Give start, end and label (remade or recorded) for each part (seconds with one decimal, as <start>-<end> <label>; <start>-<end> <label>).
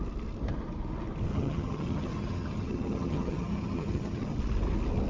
0.0-1.3 recorded; 1.3-4.4 remade; 4.4-5.1 recorded